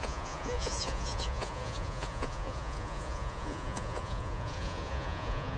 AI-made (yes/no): yes